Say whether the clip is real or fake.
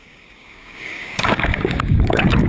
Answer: fake